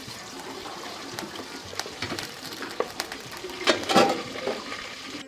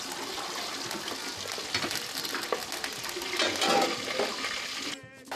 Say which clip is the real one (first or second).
second